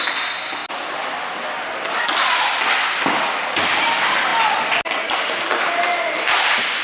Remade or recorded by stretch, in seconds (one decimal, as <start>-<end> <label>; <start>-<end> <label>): 0.0-6.8 recorded